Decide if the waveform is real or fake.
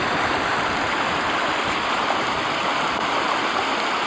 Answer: real